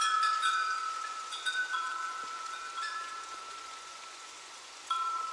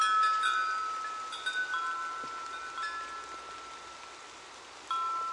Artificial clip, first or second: first